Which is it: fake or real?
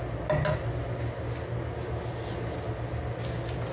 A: real